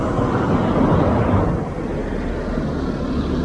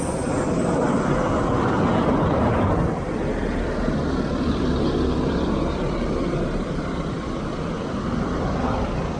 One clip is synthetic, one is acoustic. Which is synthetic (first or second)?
second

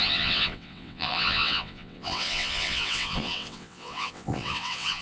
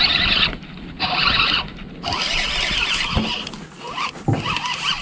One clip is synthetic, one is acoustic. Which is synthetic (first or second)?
first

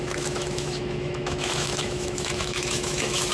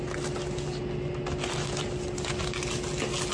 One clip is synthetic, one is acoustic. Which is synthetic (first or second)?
first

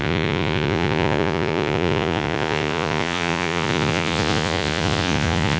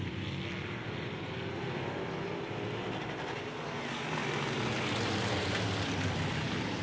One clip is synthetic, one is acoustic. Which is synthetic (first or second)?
first